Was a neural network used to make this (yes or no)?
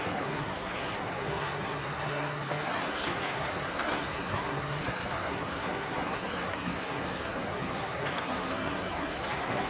yes